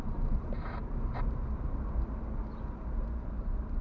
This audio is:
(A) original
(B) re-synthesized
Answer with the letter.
B